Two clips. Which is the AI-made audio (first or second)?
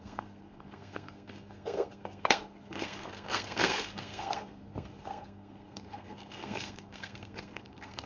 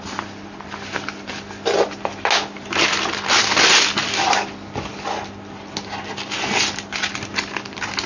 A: first